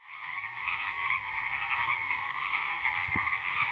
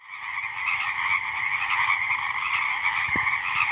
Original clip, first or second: second